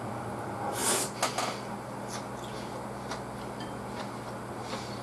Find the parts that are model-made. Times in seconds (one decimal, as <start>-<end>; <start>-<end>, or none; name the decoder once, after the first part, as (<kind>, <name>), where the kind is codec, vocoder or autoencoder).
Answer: none